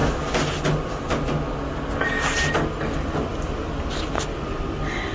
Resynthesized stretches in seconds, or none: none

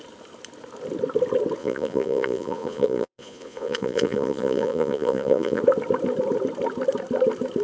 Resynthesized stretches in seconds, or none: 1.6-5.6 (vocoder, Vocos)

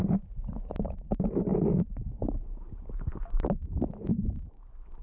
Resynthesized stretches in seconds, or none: 0.0-0.5 (vocoder, Vocos)